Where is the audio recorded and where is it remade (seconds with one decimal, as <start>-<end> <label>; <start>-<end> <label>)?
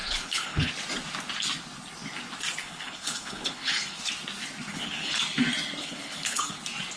0.0-0.7 remade; 0.7-2.6 recorded; 2.6-4.1 remade; 4.1-4.7 recorded; 4.7-5.2 remade; 5.2-5.8 recorded; 5.8-6.6 remade; 6.6-7.0 recorded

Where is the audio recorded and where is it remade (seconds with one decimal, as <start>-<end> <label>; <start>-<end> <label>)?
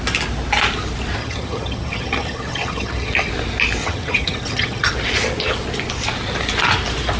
0.0-1.2 recorded; 1.2-3.3 remade; 3.3-3.8 recorded; 3.8-4.9 remade; 4.9-7.2 recorded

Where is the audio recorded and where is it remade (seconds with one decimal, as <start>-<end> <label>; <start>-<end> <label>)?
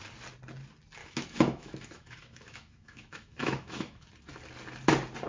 0.0-1.0 recorded; 1.0-4.1 remade; 4.1-5.3 recorded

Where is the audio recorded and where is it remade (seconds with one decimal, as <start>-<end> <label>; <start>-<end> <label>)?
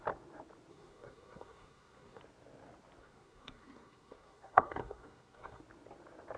0.0-0.7 recorded; 0.7-2.2 remade; 2.2-3.0 recorded; 3.0-5.6 remade; 5.6-6.4 recorded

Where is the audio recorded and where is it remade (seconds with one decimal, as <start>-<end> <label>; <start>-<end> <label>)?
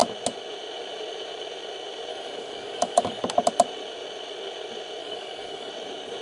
0.0-2.1 recorded; 2.1-3.2 remade; 3.2-5.0 recorded; 5.0-5.7 remade; 5.7-6.2 recorded